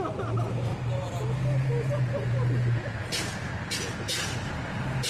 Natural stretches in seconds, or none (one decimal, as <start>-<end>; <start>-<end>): 0.0-5.1